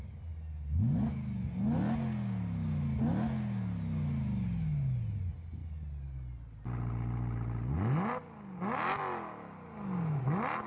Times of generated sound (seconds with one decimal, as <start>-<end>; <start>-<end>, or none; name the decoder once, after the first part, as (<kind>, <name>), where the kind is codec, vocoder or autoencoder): none